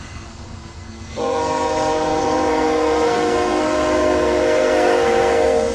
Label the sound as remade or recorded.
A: remade